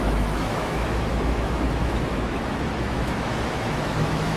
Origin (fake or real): fake